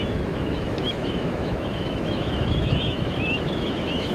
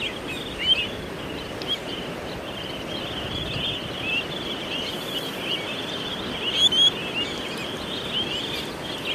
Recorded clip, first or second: second